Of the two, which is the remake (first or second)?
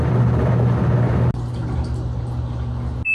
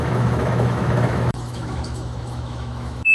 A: second